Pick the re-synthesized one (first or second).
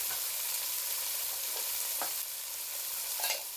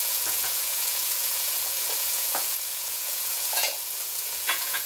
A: second